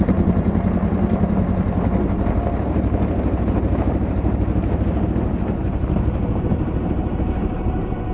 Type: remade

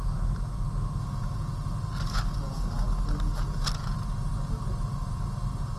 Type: recorded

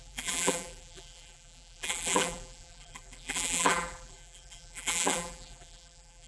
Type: remade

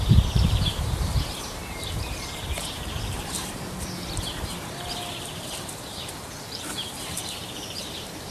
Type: remade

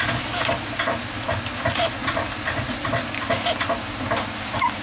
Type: recorded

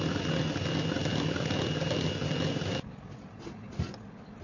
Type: recorded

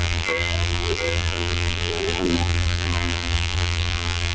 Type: remade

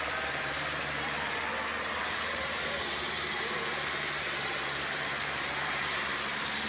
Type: remade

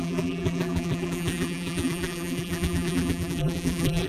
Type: remade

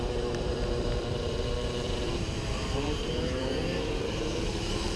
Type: remade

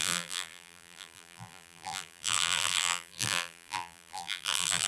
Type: remade